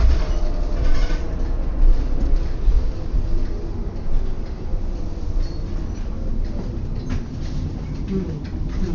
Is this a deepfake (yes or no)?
no